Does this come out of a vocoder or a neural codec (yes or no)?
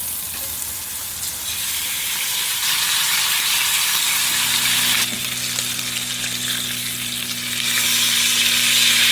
no